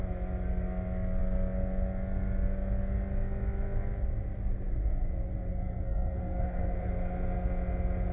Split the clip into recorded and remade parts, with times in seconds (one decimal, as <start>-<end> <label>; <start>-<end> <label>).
0.0-5.5 recorded; 5.5-6.9 remade; 6.9-8.1 recorded

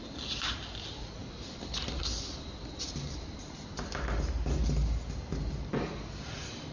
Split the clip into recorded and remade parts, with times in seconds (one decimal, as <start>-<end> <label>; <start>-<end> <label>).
0.0-6.7 recorded

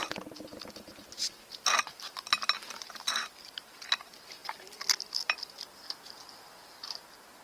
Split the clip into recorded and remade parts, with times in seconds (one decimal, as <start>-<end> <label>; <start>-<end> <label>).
0.0-7.4 recorded

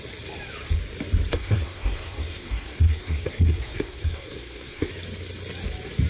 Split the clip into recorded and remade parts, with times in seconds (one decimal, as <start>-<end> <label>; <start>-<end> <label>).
0.0-1.3 recorded; 1.3-4.9 remade; 4.9-6.1 recorded

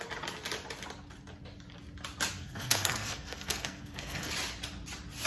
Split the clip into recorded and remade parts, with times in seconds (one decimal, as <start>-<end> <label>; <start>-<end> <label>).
0.0-2.4 recorded; 2.4-4.3 remade; 4.3-5.3 recorded

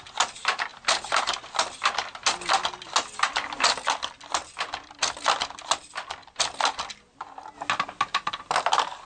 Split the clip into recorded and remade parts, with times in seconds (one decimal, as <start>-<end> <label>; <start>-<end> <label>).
0.0-9.0 recorded

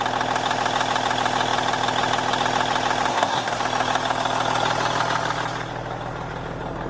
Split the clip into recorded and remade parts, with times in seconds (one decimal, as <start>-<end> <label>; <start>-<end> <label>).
0.0-3.1 recorded; 3.1-3.6 remade; 3.6-6.9 recorded

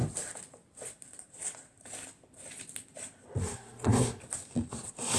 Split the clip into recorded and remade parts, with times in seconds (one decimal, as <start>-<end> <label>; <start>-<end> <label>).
0.0-3.4 recorded; 3.4-4.2 remade; 4.2-5.2 recorded